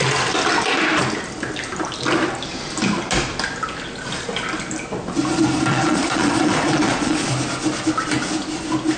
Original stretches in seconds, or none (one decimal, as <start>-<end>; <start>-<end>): 0.0-5.7; 7.3-9.0